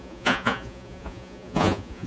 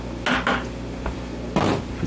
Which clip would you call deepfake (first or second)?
first